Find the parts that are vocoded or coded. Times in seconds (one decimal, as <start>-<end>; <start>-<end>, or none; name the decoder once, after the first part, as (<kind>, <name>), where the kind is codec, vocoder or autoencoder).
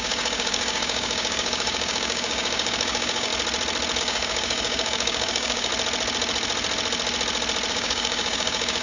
0.0-3.3 (codec, DAC); 4.0-5.7; 7.7-8.8